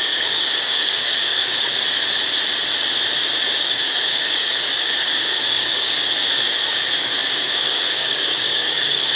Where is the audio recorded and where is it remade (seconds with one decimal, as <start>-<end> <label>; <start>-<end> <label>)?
0.0-1.7 remade; 1.7-3.5 recorded; 3.5-9.2 remade